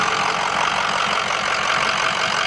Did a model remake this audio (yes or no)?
no